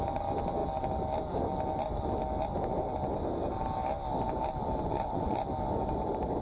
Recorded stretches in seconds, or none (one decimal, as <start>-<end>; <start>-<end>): 0.0-4.9; 5.4-6.4